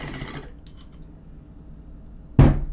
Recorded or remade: recorded